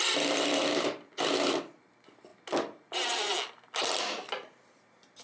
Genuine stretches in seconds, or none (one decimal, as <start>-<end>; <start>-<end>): 0.0-5.2